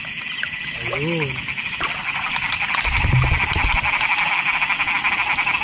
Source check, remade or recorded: recorded